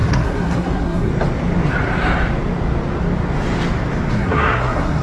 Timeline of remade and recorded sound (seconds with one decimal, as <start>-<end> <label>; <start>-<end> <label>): 0.0-1.1 remade; 1.1-4.1 recorded; 4.1-5.0 remade